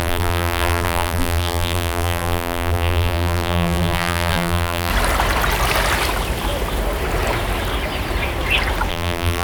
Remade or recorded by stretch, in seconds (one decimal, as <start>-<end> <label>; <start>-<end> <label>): 0.0-4.9 remade; 4.9-8.9 recorded; 8.9-9.4 remade